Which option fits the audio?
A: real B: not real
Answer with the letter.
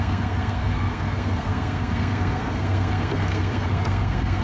B